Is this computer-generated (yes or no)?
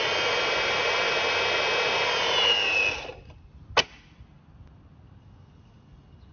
no